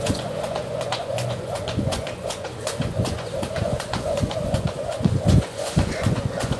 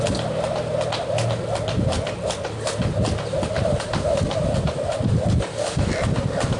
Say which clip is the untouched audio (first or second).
second